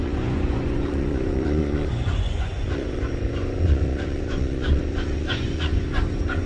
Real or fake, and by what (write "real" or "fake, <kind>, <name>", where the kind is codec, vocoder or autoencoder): fake, vocoder, Vocos